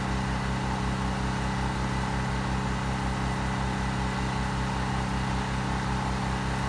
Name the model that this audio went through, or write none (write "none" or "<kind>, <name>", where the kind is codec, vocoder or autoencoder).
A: none